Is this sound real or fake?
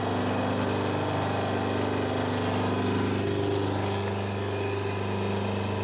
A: real